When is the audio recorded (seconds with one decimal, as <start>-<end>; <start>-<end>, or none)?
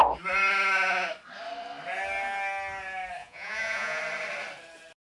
0.0-3.2; 4.0-5.1